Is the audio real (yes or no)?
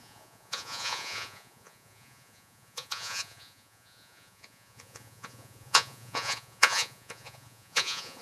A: no